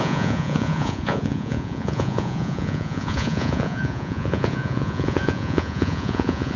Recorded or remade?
remade